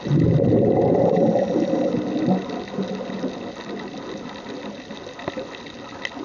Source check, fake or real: real